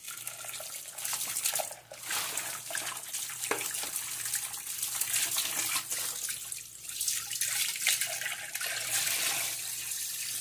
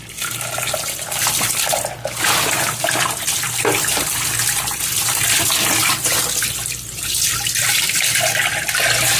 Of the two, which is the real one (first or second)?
first